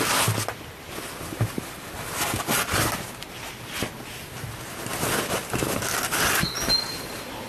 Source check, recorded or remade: recorded